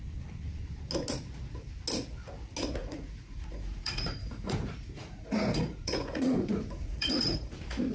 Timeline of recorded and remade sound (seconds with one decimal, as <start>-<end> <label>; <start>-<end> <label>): 0.0-2.8 recorded; 2.8-7.5 remade; 7.5-7.9 recorded